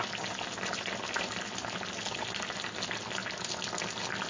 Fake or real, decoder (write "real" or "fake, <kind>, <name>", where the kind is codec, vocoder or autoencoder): real